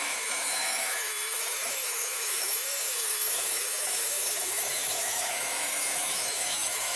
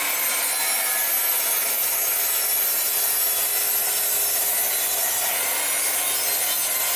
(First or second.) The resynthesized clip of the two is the first